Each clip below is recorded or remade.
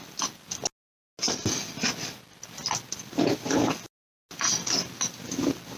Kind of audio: recorded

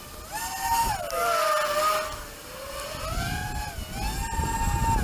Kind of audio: recorded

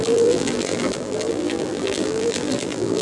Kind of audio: remade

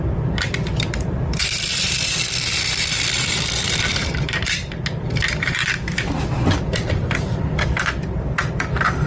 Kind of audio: remade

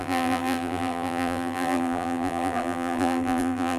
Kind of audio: remade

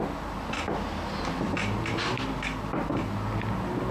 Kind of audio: recorded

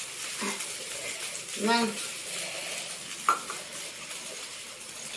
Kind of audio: recorded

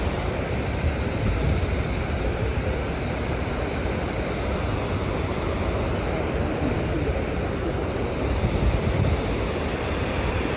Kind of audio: remade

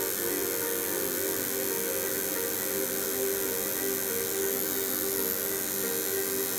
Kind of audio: recorded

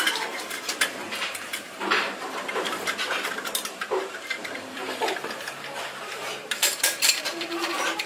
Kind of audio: remade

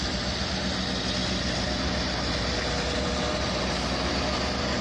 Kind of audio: recorded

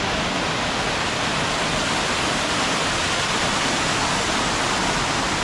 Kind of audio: recorded